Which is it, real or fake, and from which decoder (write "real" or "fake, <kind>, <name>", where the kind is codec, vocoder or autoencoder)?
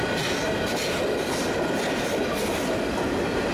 real